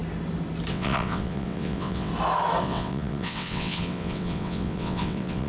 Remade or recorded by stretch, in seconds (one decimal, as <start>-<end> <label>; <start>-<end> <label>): 0.0-0.7 recorded; 0.7-2.1 remade; 2.1-2.6 recorded; 2.6-5.5 remade